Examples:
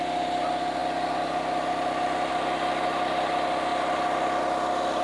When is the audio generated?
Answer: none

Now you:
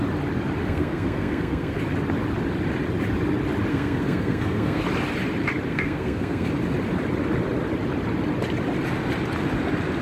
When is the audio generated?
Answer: 0.6-1.8 (codec, SNAC); 3.7-4.8; 5.7-6.5

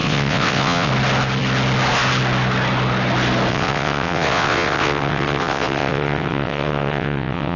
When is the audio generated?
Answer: 0.0-0.9 (vocoder, WaveNeXt); 3.5-7.6

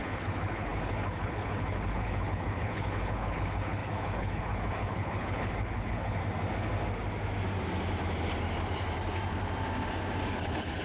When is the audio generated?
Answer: 0.0-6.2 (codec, HILCodec); 10.3-10.8

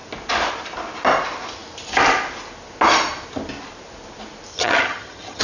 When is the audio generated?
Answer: 4.5-5.4 (vocoder, HiFi-GAN)

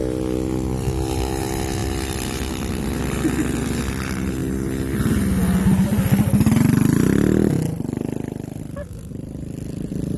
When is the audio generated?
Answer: 1.8-3.9 (vocoder, BigVGAN v2)

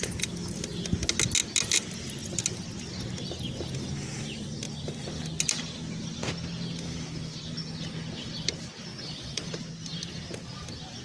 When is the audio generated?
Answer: 8.9-9.5 (vocoder, Vocos)

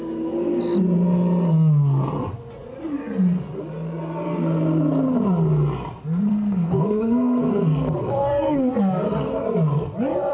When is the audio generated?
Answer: 6.3-8.7 (codec, SNAC)